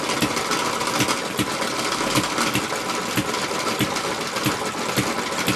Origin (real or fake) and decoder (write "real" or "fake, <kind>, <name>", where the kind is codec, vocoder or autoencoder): real